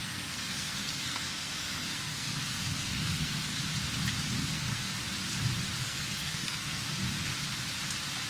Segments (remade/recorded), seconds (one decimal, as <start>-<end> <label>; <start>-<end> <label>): 0.0-3.5 remade; 3.5-4.4 recorded; 4.4-5.0 remade; 5.0-5.8 recorded; 5.8-7.0 remade; 7.0-8.3 recorded